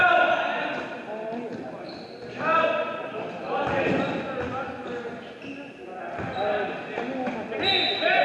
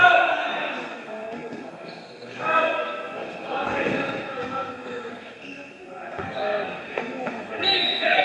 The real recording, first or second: first